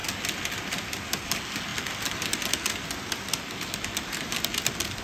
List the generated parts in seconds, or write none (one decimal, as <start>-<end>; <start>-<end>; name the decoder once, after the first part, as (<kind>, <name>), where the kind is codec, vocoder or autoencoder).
none